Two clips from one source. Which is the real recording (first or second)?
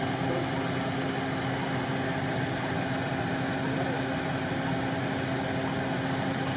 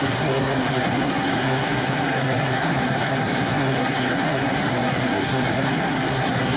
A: first